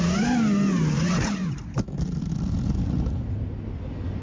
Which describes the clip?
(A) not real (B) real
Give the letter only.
B